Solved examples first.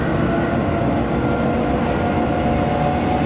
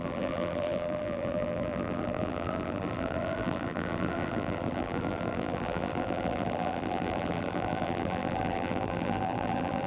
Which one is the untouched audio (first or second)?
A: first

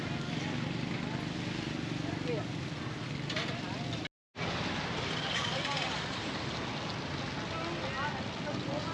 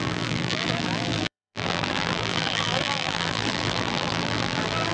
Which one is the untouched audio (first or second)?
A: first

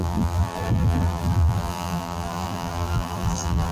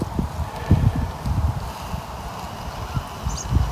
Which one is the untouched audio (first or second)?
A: second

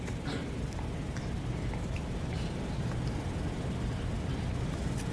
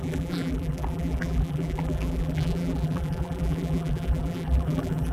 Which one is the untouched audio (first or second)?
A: first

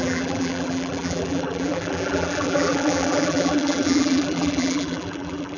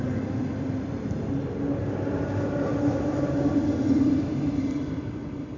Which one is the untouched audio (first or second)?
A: second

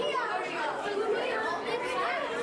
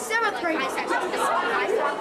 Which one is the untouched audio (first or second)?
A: second